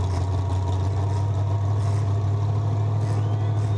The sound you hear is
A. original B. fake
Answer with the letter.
A